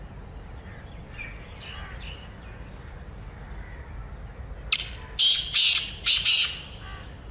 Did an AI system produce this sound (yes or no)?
no